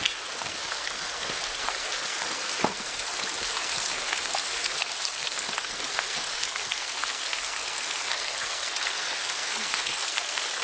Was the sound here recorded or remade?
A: remade